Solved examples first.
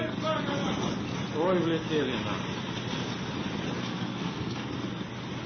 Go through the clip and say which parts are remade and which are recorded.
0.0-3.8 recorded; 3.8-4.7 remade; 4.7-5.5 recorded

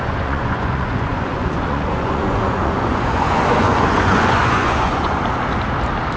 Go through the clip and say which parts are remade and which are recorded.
0.0-5.2 remade; 5.2-6.2 recorded

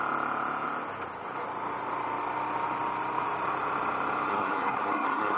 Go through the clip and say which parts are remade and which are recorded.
0.0-4.3 recorded; 4.3-5.4 remade